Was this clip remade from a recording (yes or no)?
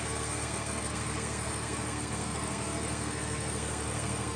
yes